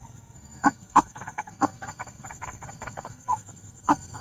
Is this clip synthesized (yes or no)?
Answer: yes